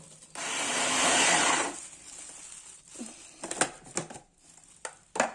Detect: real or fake real